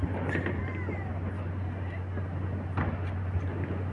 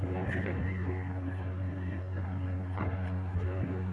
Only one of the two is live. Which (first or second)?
first